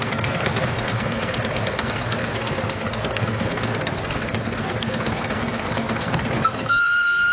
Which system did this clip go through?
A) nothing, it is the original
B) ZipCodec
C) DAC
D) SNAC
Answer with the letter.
D